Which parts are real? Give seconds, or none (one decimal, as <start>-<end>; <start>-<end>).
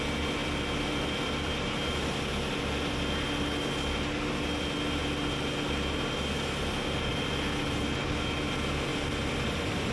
0.0-0.4; 1.5-8.9